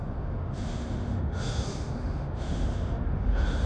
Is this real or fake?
fake